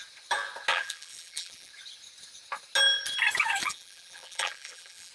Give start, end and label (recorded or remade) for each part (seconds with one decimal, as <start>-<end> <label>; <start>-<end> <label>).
0.0-0.7 recorded; 0.7-1.7 remade; 1.7-3.6 recorded; 3.6-5.1 remade